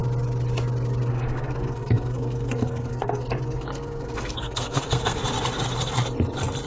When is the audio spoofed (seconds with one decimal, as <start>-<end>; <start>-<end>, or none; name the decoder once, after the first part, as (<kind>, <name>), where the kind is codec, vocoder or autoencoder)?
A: 1.1-5.2 (codec, SNAC)